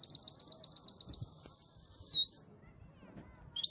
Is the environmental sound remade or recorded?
recorded